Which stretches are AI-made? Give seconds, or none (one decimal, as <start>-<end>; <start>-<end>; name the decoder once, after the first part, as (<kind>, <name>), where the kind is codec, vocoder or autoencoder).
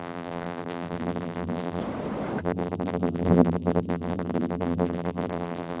0.0-1.8 (vocoder, BigVGAN v2); 2.4-5.8